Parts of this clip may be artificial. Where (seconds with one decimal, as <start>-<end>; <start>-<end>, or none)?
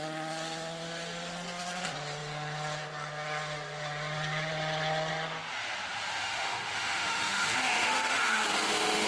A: 6.2-9.1